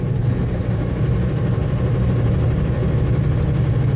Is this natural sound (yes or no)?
yes